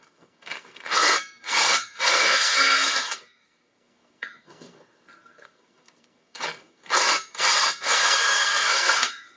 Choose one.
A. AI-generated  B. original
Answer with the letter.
A